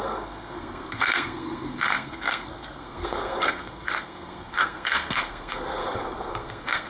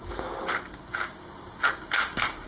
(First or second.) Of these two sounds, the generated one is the first